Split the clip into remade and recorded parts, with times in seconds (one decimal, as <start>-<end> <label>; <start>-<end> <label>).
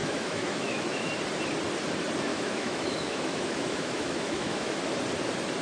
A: 0.0-1.1 remade; 1.1-2.3 recorded; 2.3-4.8 remade; 4.8-5.6 recorded